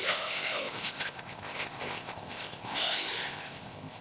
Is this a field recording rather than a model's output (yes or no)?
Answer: no